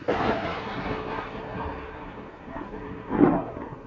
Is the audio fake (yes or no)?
yes